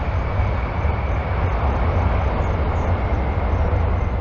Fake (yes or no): no